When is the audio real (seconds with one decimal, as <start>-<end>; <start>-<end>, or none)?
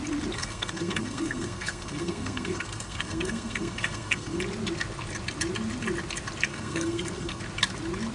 0.0-0.4; 4.4-6.5; 7.4-8.1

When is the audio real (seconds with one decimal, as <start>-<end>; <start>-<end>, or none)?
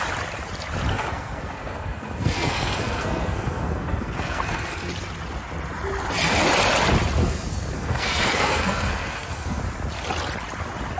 0.0-0.9; 4.9-7.2; 9.6-11.0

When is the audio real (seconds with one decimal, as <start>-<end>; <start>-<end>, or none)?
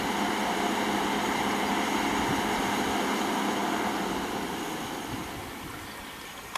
0.0-6.6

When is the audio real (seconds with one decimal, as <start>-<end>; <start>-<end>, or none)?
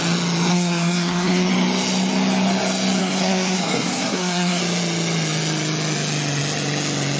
0.0-0.5; 1.5-3.0; 4.6-7.2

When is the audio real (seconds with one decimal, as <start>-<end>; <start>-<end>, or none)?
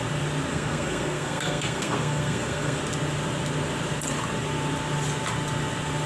0.0-0.5; 2.8-6.1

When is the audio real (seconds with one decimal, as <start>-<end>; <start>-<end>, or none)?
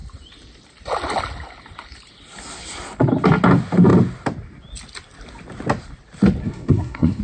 0.0-6.4